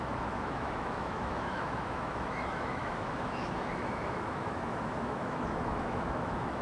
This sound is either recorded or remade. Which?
remade